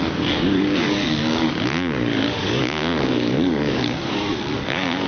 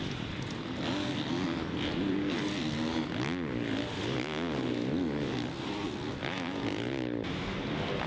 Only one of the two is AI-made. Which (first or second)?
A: first